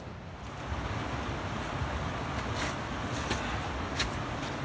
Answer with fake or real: real